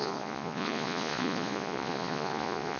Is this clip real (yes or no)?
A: no